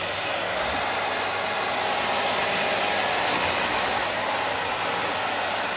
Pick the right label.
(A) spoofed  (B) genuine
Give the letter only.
B